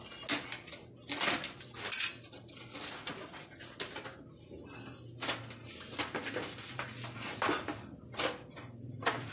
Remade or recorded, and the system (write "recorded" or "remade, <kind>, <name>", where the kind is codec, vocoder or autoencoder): recorded